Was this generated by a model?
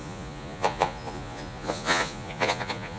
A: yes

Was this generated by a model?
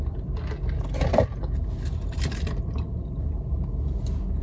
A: no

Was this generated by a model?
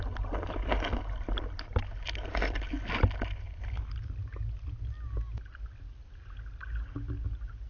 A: no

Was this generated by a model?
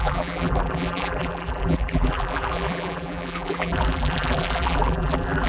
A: yes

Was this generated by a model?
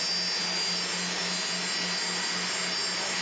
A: no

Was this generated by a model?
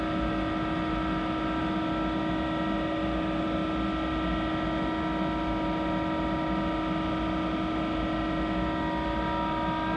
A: no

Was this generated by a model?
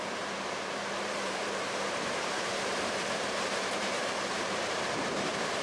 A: yes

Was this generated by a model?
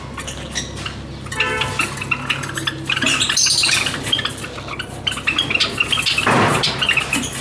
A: no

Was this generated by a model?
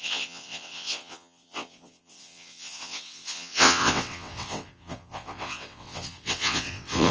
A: yes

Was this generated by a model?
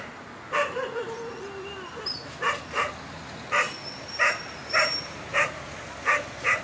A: yes